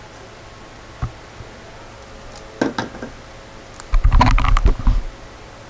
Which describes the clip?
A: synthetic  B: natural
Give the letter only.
B